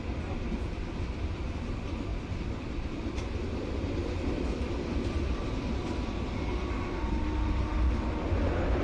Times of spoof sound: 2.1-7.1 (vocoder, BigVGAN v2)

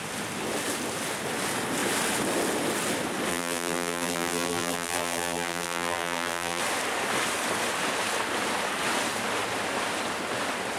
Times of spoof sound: 3.3-6.6 (vocoder, BigVGAN v2)

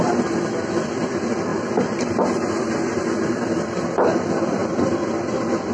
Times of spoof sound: 0.0-1.5 (vocoder, BigVGAN v2); 3.0-5.7

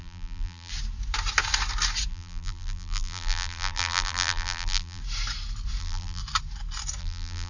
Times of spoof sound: 0.0-0.7 (vocoder, BigVGAN v2); 2.1-5.0; 5.8-6.2; 7.0-7.5